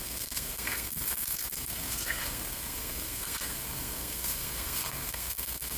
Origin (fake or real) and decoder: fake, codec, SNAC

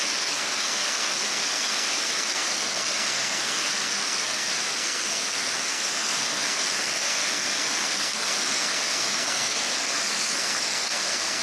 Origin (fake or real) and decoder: fake, codec, SNAC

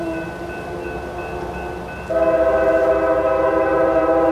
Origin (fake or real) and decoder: real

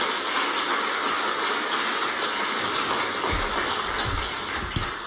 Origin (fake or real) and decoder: real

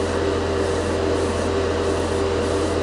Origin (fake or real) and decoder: real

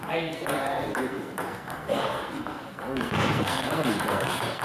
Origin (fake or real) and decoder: fake, codec, SNAC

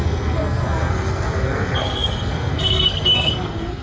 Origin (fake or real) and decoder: fake, codec, SNAC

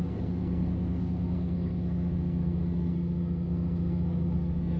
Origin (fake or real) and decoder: fake, codec, SNAC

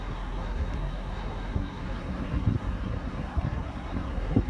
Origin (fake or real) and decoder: fake, codec, SNAC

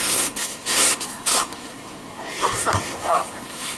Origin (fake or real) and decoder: fake, codec, SNAC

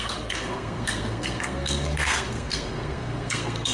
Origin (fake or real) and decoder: fake, codec, SNAC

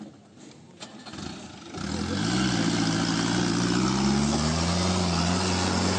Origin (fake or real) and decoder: real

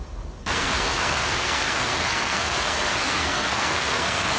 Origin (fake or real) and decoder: fake, codec, SNAC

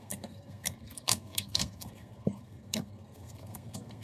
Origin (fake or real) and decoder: fake, codec, SNAC